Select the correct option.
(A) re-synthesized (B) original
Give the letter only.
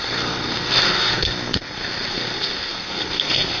A